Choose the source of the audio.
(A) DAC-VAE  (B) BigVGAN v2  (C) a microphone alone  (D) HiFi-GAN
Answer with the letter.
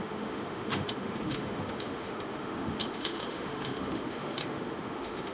A